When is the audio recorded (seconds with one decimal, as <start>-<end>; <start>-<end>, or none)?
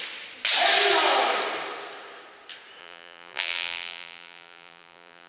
0.0-2.8